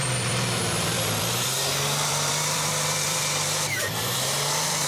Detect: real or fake fake